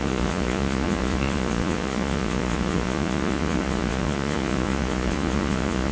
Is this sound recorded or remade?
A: remade